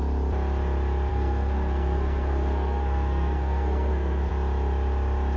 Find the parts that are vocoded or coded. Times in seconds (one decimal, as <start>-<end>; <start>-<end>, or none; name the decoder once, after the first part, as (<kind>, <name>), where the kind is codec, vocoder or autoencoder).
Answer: 1.1-4.3 (codec, SNAC)